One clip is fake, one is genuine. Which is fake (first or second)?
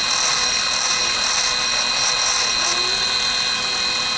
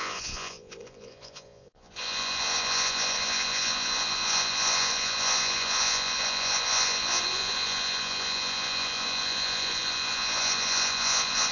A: second